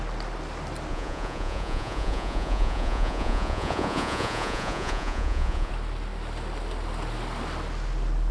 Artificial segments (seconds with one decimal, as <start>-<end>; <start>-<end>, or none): 0.9-5.7